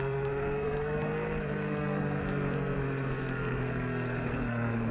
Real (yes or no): no